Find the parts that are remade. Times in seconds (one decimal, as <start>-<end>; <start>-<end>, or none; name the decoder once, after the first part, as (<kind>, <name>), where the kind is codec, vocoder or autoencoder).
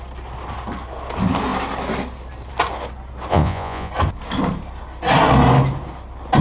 3.3-3.9 (vocoder, Vocos)